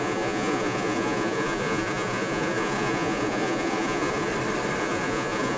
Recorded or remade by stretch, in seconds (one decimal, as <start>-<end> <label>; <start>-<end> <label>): 0.0-4.3 remade; 4.3-4.8 recorded; 4.8-5.6 remade